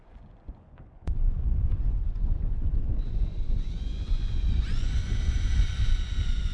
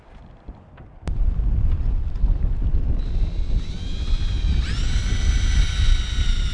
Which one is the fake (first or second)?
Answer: first